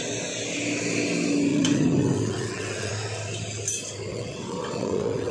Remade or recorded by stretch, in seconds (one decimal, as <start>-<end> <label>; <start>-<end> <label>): 0.0-1.5 recorded; 1.5-2.9 remade; 2.9-4.1 recorded; 4.1-5.3 remade